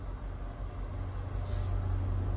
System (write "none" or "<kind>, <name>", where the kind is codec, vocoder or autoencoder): none